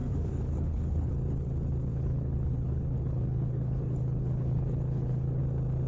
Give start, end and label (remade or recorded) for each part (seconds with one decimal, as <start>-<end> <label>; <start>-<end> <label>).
0.0-1.1 remade; 1.1-1.9 recorded; 1.9-5.4 remade; 5.4-5.9 recorded